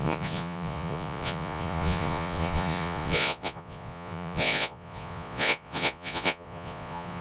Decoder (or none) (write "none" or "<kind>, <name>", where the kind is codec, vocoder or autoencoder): vocoder, Vocos